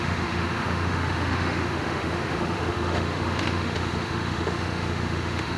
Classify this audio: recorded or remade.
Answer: remade